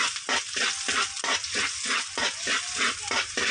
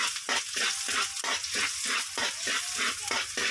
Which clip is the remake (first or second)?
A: first